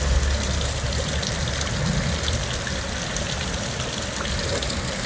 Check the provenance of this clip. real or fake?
real